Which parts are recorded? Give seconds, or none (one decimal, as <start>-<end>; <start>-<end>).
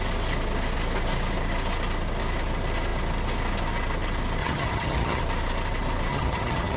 0.0-4.4; 5.2-6.1